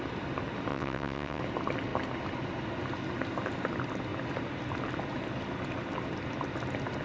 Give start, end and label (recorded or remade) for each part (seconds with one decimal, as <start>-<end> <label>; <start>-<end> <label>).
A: 0.0-0.7 recorded; 0.7-1.4 remade; 1.4-7.0 recorded